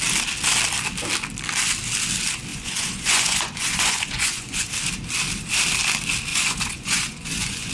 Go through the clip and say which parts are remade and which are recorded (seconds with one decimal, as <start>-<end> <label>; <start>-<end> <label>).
0.0-2.5 recorded; 2.5-4.7 remade; 4.7-6.3 recorded; 6.3-7.7 remade